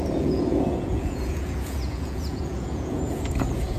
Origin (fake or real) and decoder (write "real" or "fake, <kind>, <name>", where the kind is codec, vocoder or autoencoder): fake, vocoder, Vocos